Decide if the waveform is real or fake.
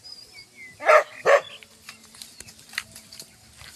real